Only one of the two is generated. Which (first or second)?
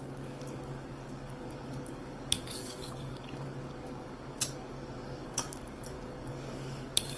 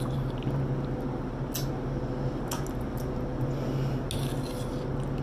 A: first